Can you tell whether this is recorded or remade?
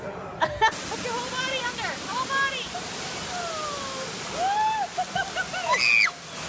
recorded